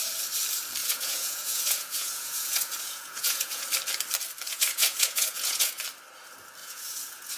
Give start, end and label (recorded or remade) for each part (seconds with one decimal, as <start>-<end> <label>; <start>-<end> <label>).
0.0-0.8 recorded; 0.8-3.7 remade; 3.7-4.5 recorded; 4.5-5.8 remade; 5.8-6.6 recorded; 6.6-7.4 remade